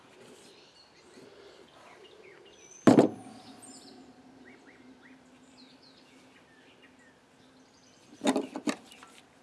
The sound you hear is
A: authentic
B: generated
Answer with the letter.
A